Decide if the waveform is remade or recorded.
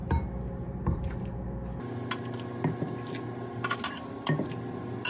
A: recorded